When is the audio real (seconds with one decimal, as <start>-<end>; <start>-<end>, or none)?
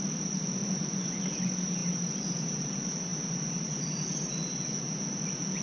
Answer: 0.0-0.6; 1.2-5.6